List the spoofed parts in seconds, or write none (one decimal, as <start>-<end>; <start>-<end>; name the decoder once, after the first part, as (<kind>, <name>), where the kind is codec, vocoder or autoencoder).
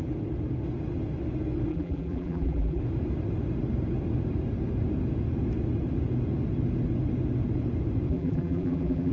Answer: 1.7-2.8 (vocoder, BigVGAN v2); 8.1-9.1